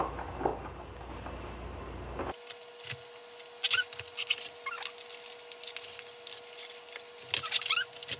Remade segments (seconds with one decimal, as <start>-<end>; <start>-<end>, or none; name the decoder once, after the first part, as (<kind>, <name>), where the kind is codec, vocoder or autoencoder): none